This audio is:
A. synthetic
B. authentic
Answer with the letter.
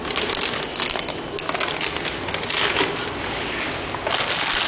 B